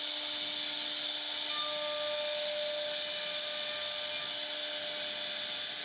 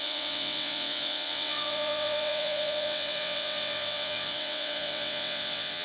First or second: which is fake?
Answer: second